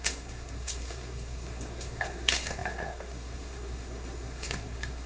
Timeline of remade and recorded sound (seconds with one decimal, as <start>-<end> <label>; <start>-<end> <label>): 0.0-5.1 remade